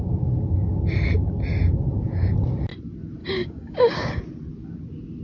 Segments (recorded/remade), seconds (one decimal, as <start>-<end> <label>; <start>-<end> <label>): 0.0-3.2 recorded; 3.2-4.2 remade; 4.2-5.2 recorded